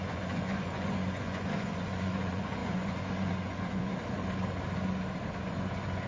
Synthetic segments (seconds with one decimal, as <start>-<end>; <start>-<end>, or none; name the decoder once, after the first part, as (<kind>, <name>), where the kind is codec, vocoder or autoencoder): 0.0-3.9 (vocoder, Vocos); 5.4-6.1